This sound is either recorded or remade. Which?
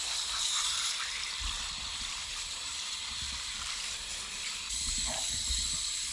remade